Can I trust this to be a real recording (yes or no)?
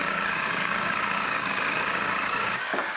no